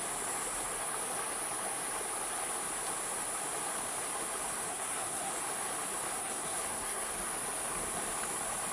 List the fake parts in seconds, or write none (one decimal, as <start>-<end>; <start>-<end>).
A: 4.7-5.3; 6.2-7.1